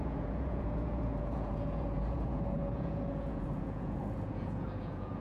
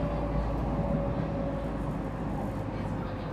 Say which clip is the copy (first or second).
first